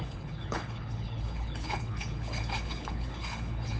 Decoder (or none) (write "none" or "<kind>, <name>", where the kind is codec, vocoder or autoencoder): codec, HILCodec